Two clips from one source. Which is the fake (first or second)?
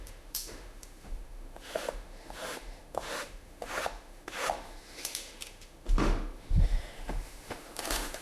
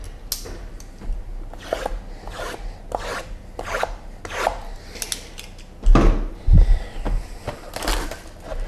first